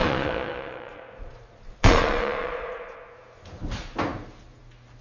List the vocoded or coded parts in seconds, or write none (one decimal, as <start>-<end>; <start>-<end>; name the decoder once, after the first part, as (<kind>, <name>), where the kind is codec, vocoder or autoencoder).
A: 0.0-3.0 (vocoder, Vocos)